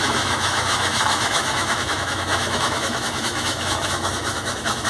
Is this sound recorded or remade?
remade